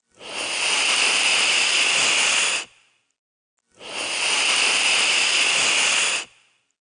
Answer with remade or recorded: recorded